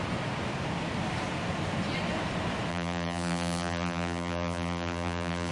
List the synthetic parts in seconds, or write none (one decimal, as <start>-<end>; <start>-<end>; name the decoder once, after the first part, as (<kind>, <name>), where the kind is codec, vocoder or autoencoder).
2.7-5.5 (vocoder, BigVGAN v2)